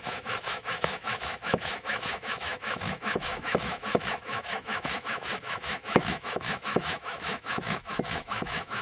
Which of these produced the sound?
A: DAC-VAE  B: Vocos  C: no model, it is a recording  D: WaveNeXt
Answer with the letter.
A